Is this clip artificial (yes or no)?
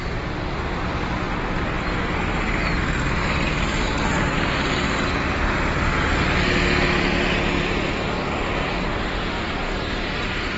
no